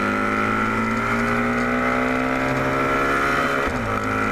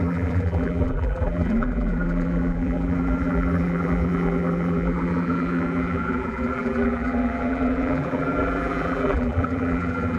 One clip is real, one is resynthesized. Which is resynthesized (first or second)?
second